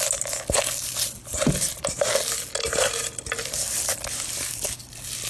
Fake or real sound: real